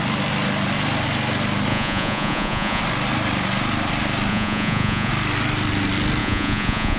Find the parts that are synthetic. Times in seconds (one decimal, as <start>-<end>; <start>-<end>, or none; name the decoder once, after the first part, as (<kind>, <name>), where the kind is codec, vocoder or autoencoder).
1.7-2.8 (vocoder, Vocos); 4.3-5.1; 6.2-7.0